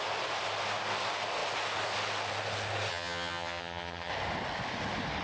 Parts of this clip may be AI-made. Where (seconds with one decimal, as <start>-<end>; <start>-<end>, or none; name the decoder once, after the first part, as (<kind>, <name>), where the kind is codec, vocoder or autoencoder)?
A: 2.9-4.1 (vocoder, HiFi-GAN)